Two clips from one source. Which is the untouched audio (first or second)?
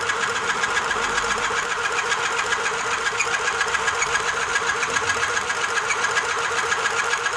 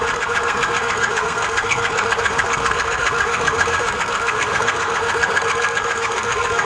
first